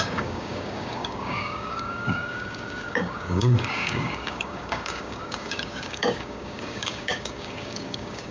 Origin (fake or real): fake